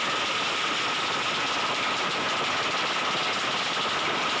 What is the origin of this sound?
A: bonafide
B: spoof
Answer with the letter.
A